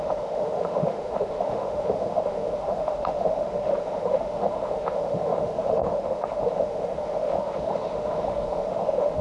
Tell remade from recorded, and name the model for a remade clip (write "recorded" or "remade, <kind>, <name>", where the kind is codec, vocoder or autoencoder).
remade, autoencoder, DAC-VAE